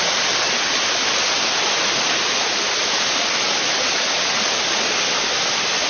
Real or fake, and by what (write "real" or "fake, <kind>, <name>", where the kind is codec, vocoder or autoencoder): real